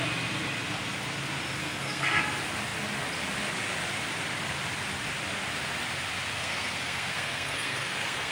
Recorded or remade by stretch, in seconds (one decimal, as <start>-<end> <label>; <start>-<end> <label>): 0.0-1.6 recorded; 1.6-2.2 remade; 2.2-6.3 recorded; 6.3-8.3 remade